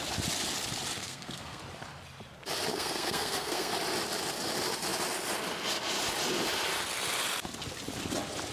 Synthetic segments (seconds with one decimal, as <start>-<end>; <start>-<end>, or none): 1.0-1.6; 2.7-3.7